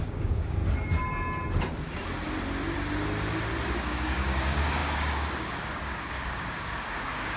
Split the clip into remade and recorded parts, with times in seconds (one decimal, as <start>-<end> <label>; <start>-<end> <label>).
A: 0.0-0.6 remade; 0.6-3.7 recorded; 3.7-7.4 remade